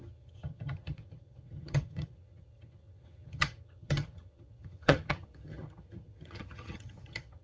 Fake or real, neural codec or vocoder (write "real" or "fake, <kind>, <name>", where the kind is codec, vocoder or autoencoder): fake, vocoder, HiFi-GAN